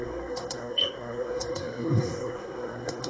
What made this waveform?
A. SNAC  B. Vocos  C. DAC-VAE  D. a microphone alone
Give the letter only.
A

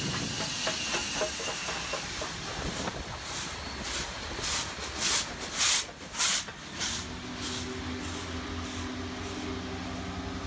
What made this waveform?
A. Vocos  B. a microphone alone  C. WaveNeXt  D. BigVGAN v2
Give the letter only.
B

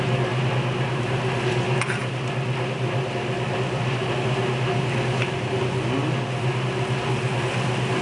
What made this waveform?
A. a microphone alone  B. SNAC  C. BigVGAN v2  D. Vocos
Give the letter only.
A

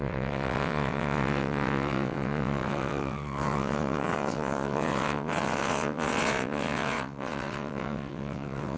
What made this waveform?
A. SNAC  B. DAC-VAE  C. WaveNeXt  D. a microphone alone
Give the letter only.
C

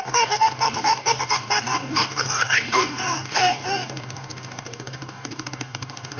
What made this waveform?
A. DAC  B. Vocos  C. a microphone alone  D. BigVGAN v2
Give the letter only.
A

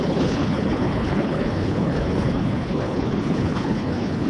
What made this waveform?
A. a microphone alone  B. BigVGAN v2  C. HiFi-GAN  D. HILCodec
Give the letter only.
D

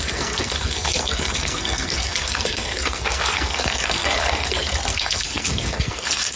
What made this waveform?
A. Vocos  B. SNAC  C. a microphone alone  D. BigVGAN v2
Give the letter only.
B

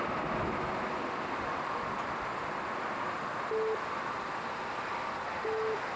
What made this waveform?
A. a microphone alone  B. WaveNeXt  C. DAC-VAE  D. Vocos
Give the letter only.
A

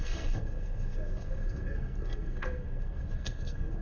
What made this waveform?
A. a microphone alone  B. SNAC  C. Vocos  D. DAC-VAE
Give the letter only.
B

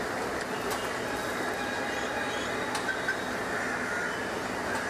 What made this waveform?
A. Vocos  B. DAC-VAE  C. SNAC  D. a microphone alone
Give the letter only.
D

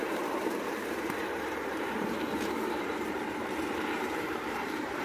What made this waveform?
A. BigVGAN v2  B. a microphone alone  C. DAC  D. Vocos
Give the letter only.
A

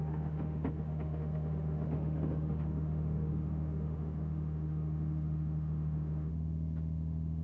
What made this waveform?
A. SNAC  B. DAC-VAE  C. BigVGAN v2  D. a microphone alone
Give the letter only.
B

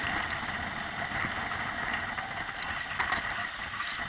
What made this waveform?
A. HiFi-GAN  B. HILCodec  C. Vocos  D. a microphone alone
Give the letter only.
D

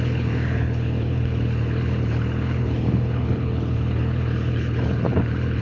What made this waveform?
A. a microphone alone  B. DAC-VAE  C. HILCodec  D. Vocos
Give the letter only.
C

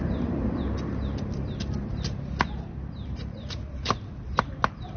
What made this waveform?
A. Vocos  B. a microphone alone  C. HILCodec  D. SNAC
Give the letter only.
B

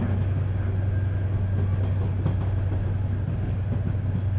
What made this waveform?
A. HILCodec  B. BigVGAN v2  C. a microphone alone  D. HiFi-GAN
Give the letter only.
C